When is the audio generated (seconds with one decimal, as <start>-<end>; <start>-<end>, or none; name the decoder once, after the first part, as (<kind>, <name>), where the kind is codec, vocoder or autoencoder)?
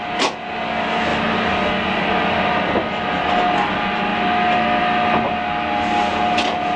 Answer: none